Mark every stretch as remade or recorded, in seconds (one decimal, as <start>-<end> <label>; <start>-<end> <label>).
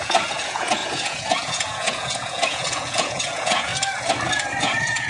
0.0-3.7 remade; 3.7-4.6 recorded; 4.6-5.1 remade